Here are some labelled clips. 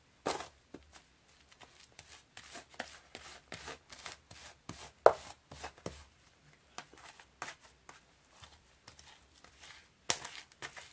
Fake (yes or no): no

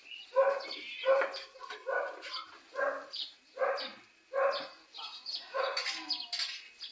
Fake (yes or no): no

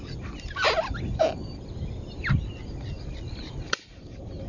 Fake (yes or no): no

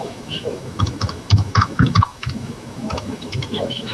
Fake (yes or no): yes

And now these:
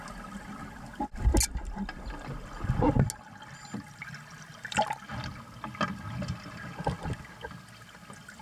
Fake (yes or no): no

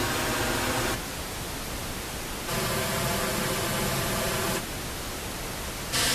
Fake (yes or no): no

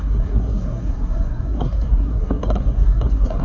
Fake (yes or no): yes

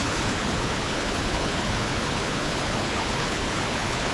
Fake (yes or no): yes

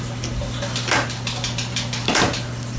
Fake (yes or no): no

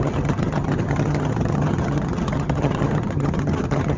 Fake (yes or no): yes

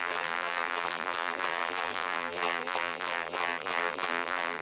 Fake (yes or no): yes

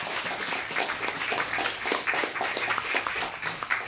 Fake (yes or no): yes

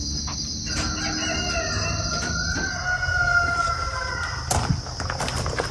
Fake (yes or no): no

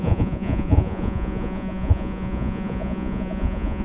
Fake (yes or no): yes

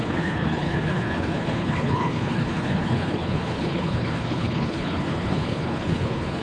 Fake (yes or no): yes